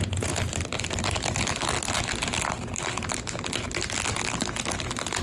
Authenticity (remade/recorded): recorded